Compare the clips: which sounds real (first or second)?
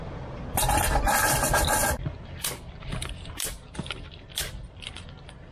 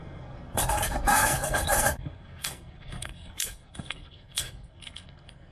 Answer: first